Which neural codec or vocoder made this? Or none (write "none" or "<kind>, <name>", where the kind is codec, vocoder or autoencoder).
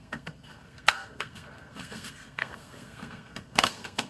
codec, SNAC